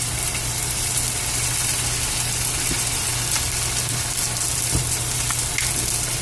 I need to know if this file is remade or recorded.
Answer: recorded